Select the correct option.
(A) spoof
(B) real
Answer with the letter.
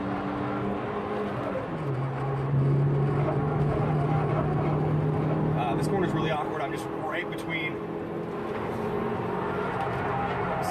B